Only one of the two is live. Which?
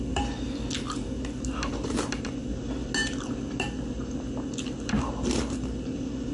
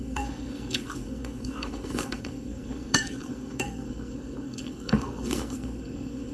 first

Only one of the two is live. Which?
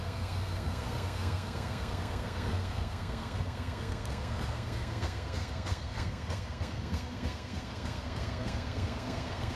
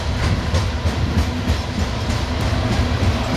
second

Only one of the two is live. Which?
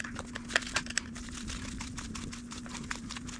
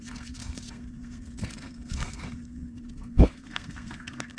first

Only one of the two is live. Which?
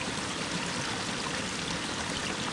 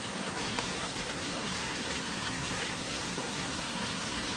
first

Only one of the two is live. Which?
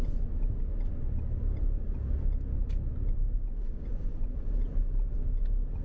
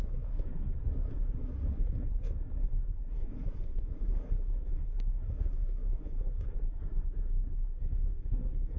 first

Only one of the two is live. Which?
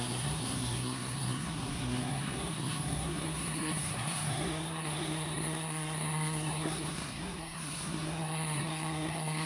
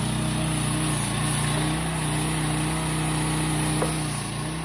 second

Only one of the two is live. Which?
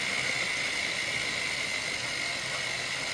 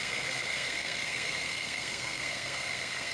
first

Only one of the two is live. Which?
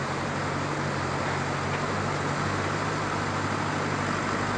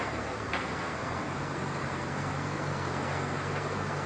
first